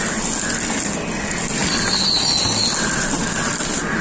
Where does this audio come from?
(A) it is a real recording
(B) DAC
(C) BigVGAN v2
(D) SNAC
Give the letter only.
A